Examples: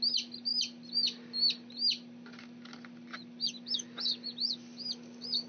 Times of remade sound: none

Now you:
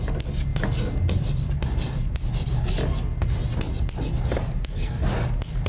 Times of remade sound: 4.6-5.1 (codec, SNAC)

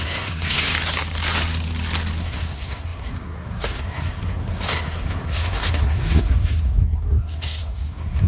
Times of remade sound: 0.0-0.7 (codec, SNAC); 2.2-8.3

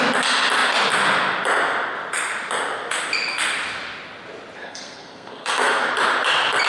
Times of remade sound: 4.6-5.9 (codec, SNAC)

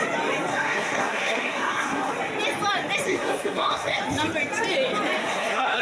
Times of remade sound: 0.5-2.1 (codec, SNAC); 3.0-4.0; 5.2-5.8

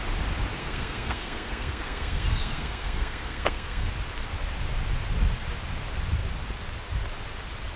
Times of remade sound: 0.6-3.9 (codec, SNAC)

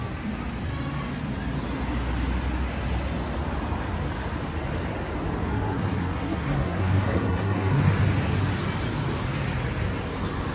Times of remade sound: 5.4-7.8 (codec, SNAC)

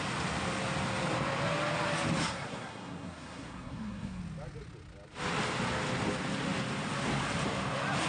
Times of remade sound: 2.2-4.2 (codec, SNAC)